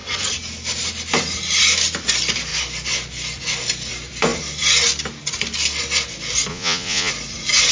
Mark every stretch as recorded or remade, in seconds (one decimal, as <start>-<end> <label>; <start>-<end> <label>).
0.0-6.5 recorded; 6.5-7.1 remade; 7.1-7.7 recorded